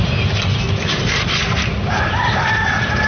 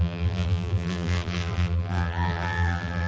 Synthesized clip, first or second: second